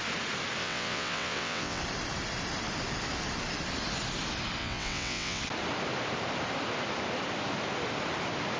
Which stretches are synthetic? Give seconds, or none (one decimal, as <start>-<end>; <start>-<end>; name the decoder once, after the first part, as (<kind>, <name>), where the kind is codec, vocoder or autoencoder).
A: 0.6-1.8 (vocoder, WaveNeXt); 4.6-5.4